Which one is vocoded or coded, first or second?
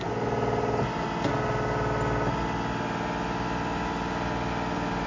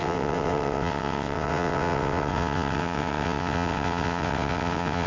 second